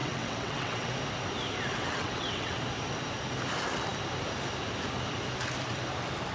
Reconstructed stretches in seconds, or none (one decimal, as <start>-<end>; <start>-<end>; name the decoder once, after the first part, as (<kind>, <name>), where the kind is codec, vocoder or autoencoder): 0.0-0.9 (vocoder, WaveNeXt); 1.7-2.6

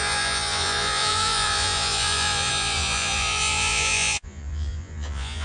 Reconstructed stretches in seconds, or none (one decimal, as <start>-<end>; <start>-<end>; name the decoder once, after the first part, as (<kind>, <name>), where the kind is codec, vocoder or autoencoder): 0.0-5.4 (vocoder, Vocos)

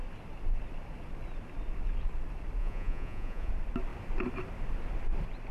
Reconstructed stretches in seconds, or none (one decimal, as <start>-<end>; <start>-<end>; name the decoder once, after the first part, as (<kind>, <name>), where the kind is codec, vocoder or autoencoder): 2.6-3.5 (vocoder, Vocos)